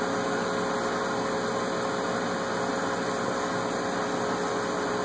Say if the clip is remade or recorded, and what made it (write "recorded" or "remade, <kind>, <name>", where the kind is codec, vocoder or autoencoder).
recorded